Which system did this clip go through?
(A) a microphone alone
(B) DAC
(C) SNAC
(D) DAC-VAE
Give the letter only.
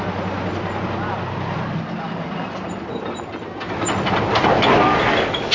A